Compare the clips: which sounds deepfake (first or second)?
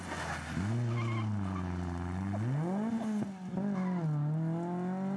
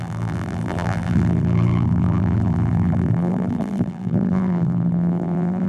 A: second